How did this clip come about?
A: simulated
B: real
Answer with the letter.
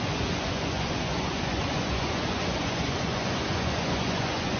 A